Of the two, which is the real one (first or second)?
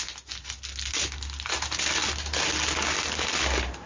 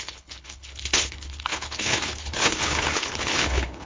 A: first